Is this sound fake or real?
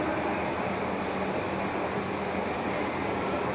real